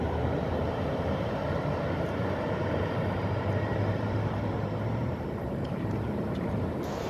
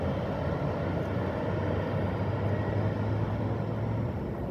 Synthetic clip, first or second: first